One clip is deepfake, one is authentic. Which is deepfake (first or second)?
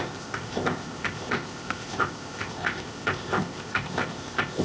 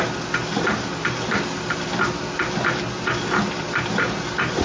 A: first